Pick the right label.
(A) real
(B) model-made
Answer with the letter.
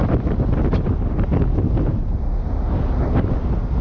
A